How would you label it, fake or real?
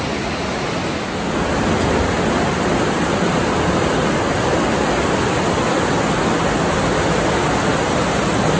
real